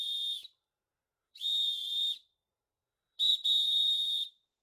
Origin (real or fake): fake